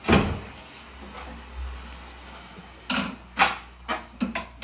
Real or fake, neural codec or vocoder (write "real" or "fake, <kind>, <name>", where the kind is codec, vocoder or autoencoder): real